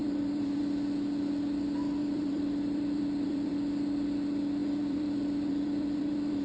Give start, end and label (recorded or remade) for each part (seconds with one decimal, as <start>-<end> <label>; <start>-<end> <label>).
0.0-0.6 remade; 0.6-2.0 recorded; 2.0-3.5 remade; 3.5-4.6 recorded; 4.6-6.4 remade